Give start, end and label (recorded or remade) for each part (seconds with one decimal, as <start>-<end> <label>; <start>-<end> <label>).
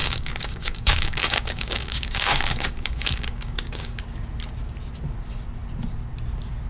0.0-4.0 remade; 4.0-6.7 recorded